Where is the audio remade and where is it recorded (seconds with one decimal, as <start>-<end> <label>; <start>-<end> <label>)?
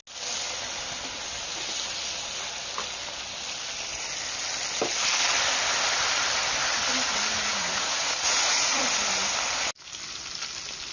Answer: 0.0-7.3 recorded; 7.3-8.9 remade; 8.9-10.9 recorded